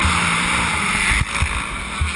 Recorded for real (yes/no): yes